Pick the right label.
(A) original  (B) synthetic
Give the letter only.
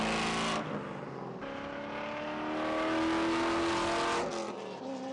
A